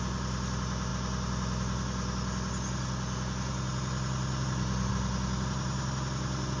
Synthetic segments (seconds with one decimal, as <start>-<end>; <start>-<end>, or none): none